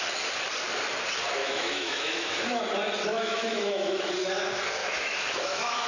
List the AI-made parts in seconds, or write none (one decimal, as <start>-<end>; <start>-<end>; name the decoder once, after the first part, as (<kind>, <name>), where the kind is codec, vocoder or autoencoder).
1.4-2.6 (autoencoder, DAC-VAE); 3.1-4.1; 4.8-5.9